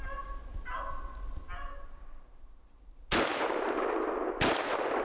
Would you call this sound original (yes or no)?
yes